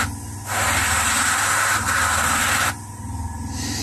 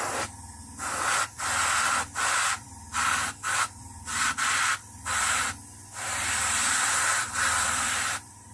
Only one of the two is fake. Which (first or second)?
second